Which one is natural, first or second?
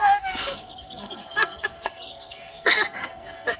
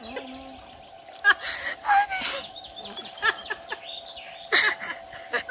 second